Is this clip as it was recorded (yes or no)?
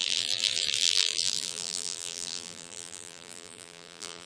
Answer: no